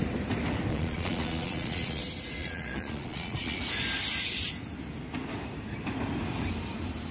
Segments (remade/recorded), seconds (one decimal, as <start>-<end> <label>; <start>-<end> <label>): 0.0-0.7 recorded; 0.7-2.0 remade; 2.0-2.4 recorded; 2.4-3.6 remade; 3.6-7.1 recorded